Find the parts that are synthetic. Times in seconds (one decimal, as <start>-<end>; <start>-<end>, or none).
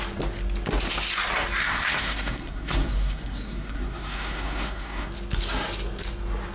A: 1.6-5.1